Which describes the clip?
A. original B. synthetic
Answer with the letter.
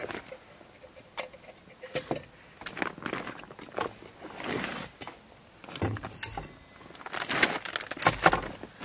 A